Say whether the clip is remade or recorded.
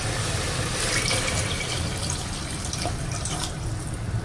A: recorded